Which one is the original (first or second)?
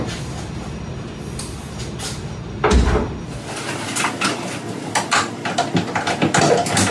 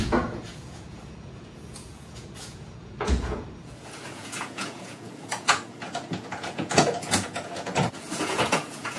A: first